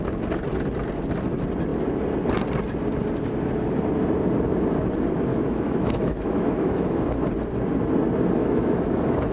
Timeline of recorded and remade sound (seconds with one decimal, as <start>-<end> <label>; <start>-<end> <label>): 0.0-5.3 recorded; 5.3-7.3 remade; 7.3-8.4 recorded; 8.4-9.3 remade